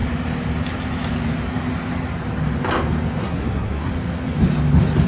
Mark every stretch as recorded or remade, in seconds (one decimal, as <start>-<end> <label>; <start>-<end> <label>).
0.0-3.2 recorded; 3.2-3.9 remade; 3.9-5.1 recorded